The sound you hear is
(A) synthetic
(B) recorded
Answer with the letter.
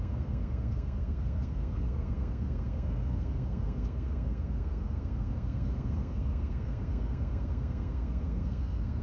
A